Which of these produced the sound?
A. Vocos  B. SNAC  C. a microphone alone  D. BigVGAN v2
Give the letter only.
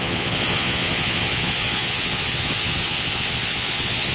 A